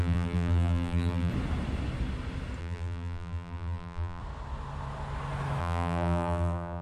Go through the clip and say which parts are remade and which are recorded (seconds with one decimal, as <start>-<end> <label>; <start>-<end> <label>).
0.0-1.3 remade; 1.3-2.6 recorded; 2.6-4.2 remade; 4.2-5.6 recorded; 5.6-6.8 remade